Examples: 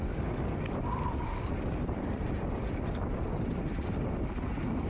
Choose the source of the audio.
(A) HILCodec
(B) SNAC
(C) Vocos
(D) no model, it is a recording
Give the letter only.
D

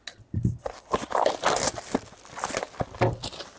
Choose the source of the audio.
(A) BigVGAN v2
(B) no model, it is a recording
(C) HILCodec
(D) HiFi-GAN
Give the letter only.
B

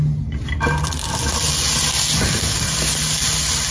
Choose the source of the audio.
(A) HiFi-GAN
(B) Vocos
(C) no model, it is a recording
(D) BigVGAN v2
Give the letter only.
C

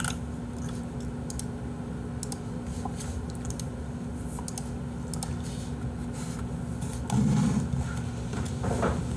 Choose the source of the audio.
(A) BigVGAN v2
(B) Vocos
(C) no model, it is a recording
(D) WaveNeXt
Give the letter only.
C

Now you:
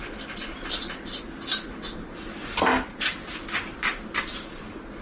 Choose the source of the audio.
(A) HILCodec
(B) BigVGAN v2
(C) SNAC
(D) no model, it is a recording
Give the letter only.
D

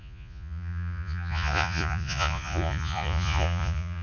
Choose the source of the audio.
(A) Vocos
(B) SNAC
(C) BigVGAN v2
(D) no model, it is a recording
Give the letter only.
A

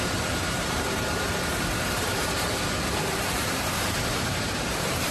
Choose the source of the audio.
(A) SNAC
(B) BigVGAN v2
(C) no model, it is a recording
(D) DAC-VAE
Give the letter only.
B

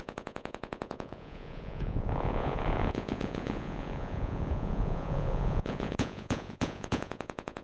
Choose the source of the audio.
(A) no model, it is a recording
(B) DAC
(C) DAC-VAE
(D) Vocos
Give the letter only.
D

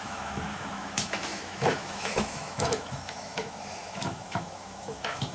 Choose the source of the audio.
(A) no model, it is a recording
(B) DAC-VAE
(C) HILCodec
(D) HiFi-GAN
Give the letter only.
B